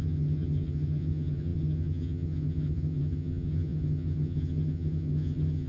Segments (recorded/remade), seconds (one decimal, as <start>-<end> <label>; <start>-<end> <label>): 0.0-5.7 remade